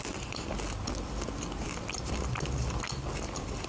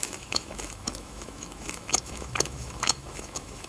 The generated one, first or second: second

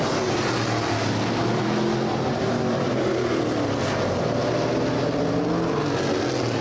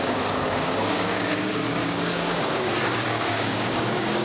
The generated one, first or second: second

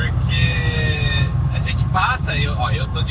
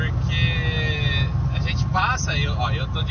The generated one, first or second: first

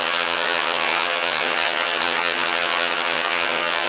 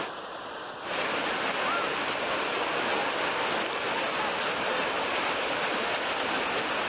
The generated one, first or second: first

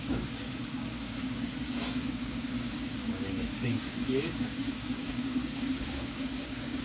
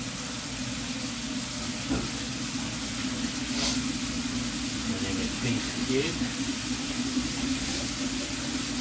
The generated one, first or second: first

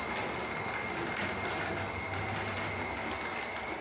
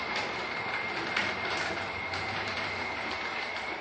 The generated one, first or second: second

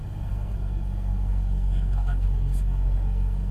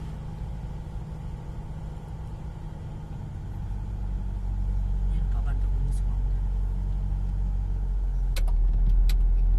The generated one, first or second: first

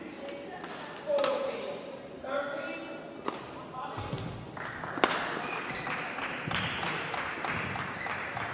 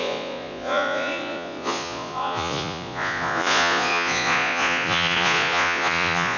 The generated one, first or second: second